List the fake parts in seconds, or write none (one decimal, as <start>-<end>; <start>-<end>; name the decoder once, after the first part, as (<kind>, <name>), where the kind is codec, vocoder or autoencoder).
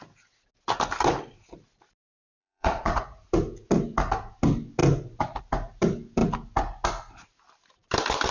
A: 2.4-3.3 (vocoder, Vocos)